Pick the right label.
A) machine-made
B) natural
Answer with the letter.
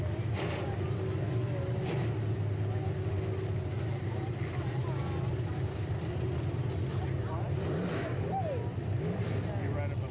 B